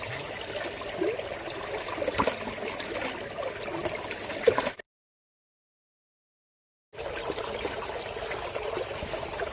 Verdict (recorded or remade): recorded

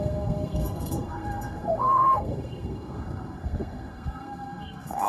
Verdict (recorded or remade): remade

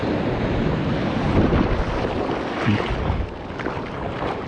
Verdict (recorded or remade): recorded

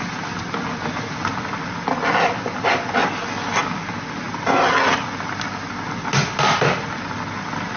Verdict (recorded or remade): recorded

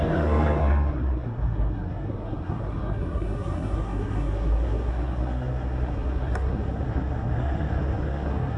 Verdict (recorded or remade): remade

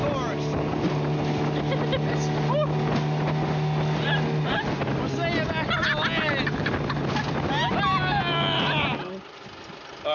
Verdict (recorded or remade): recorded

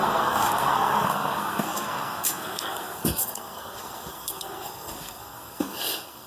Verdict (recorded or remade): remade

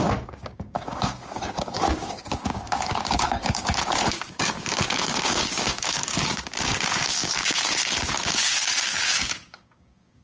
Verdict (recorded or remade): remade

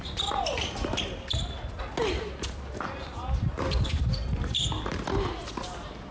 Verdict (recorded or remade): recorded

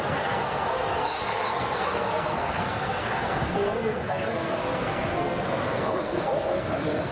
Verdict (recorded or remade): remade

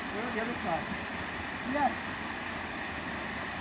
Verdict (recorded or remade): recorded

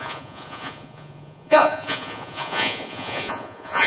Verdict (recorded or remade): remade